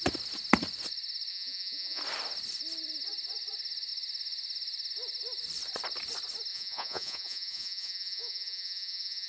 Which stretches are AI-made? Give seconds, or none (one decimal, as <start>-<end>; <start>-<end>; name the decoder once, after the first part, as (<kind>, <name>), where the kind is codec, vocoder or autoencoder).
1.3-2.0 (vocoder, Vocos); 6.5-9.3